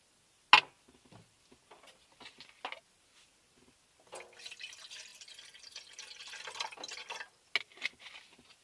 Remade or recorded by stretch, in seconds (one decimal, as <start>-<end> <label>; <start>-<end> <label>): 0.0-8.6 recorded